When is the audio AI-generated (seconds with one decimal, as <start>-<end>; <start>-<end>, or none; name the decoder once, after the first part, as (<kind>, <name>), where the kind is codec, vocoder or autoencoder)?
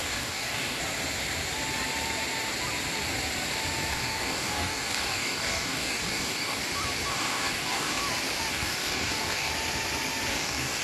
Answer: 0.0-0.8 (codec, DAC); 3.9-6.6; 7.1-8.0; 8.5-9.5; 10.3-10.8